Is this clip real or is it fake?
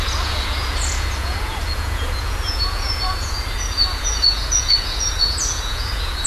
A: fake